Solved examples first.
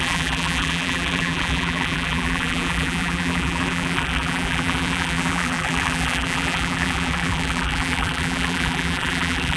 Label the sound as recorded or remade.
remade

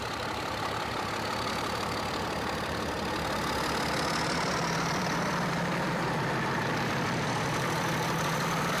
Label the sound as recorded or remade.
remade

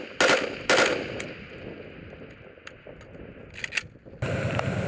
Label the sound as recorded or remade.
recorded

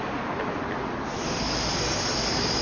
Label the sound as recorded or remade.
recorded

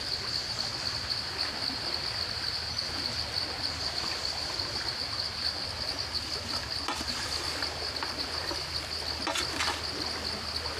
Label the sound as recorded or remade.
recorded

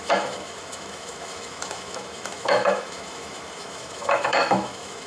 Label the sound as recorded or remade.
remade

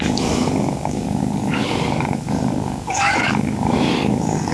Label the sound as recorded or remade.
remade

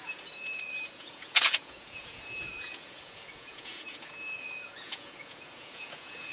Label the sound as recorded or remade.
remade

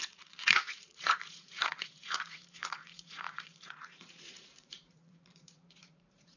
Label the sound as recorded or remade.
remade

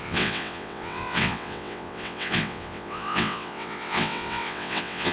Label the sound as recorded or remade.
remade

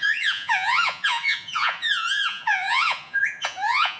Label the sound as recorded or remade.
remade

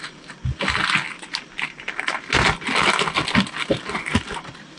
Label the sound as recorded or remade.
recorded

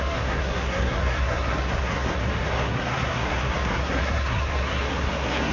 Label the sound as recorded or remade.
remade